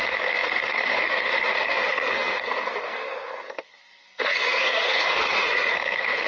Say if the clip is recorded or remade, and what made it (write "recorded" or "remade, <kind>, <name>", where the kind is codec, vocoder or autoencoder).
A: remade, codec, SNAC